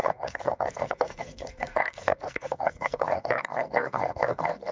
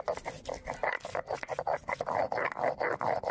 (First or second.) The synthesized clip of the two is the first